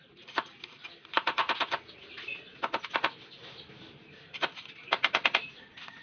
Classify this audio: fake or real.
real